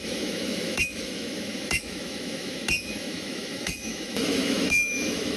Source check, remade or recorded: remade